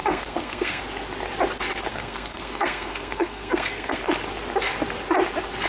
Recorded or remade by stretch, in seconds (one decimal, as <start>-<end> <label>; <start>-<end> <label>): 0.0-0.8 remade; 0.8-1.9 recorded; 1.9-4.0 remade; 4.0-5.7 recorded